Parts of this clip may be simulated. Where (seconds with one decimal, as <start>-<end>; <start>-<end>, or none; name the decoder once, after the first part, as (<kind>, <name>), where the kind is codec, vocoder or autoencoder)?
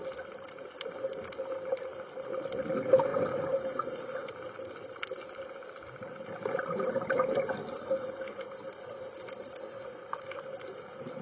none